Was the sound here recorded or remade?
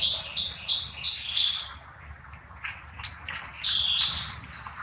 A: recorded